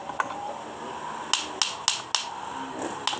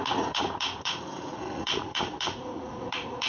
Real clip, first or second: first